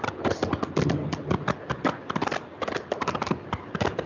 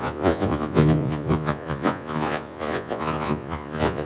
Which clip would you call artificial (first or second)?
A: second